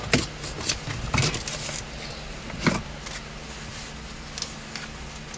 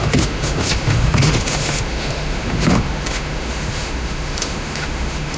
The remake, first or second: second